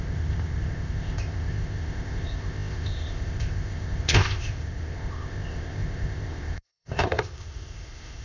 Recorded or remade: remade